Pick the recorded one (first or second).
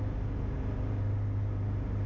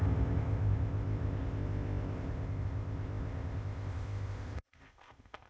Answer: first